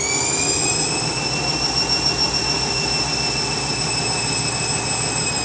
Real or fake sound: real